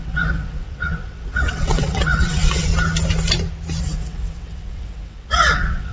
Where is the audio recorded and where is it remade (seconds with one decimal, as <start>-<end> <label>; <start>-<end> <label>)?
0.0-2.7 remade; 2.7-3.8 recorded; 3.8-5.9 remade